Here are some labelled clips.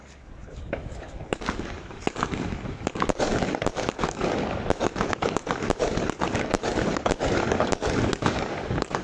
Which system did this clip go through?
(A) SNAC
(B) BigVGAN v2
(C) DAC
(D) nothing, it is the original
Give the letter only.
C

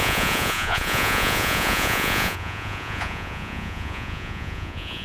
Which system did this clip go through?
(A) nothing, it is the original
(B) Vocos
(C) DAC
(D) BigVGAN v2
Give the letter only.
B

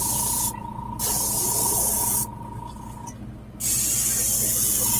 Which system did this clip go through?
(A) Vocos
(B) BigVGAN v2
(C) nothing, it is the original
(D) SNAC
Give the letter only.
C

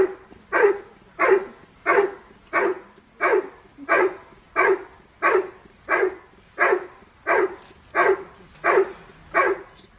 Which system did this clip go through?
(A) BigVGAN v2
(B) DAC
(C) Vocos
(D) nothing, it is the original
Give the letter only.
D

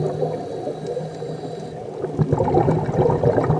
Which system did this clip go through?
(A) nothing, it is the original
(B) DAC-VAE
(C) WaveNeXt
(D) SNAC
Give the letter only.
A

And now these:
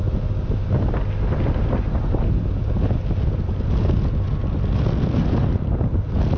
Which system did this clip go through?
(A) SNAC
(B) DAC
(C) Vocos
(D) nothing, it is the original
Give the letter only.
D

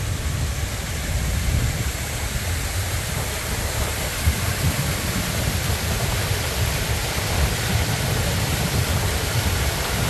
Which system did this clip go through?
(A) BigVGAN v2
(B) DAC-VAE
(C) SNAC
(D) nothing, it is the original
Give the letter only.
A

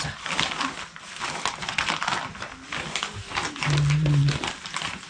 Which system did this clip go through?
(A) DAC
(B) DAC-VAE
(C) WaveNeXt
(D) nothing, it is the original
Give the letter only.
D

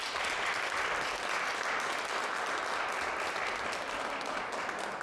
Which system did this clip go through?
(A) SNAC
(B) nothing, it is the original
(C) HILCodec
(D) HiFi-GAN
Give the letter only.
B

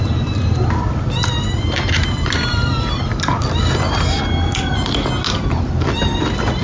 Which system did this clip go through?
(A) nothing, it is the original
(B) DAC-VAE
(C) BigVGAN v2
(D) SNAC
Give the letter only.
A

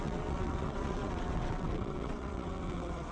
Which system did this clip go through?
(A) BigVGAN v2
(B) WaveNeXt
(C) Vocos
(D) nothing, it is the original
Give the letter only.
B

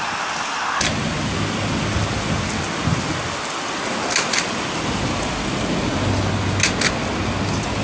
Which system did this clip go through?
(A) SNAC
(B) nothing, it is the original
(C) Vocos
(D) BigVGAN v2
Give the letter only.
B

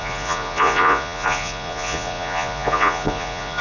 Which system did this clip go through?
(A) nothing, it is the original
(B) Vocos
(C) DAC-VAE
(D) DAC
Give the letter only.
B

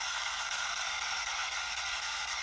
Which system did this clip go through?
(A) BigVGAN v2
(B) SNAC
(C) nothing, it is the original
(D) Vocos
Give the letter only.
B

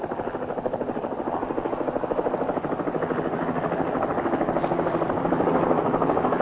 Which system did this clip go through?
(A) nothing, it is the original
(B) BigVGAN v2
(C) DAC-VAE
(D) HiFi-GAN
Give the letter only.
B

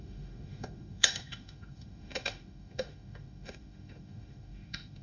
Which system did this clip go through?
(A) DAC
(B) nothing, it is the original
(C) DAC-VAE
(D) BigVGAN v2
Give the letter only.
C